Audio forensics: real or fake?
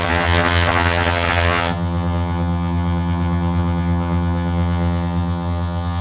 fake